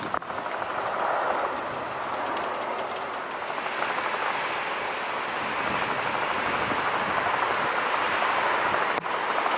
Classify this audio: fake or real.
real